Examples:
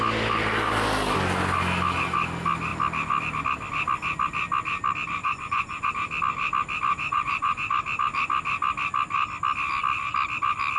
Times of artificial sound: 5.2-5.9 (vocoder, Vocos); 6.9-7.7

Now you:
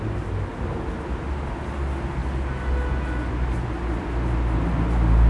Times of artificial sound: none

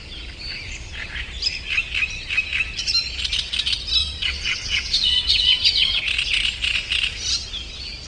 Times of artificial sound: 4.0-6.0 (vocoder, WaveNeXt)

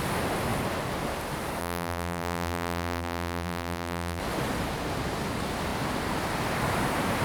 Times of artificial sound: 1.6-4.2 (vocoder, BigVGAN v2)

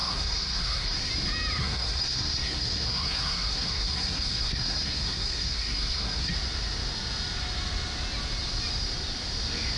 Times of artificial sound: 0.0-1.1 (codec, SNAC); 1.6-6.3

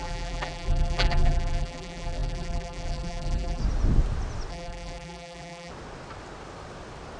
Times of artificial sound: 0.0-3.6 (vocoder, BigVGAN v2); 4.5-5.7